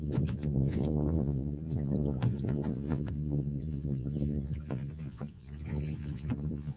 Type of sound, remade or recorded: remade